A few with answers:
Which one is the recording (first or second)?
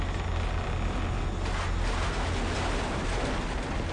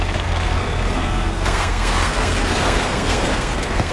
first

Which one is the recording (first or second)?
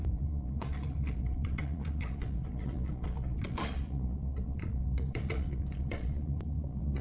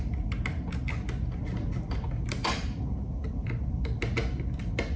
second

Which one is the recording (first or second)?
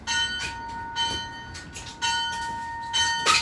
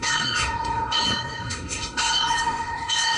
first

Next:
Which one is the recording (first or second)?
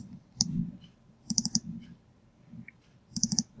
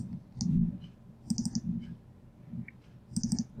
second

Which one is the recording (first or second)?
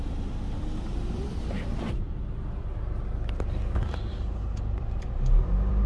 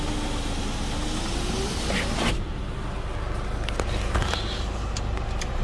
second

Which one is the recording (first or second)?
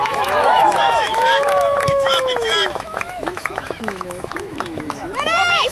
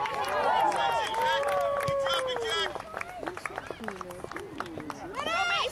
second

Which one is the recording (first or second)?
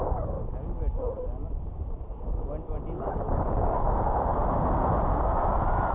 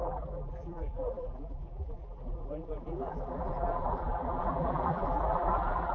first